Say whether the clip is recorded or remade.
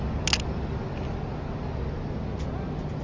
recorded